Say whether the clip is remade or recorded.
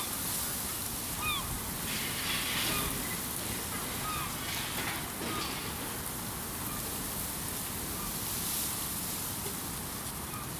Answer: recorded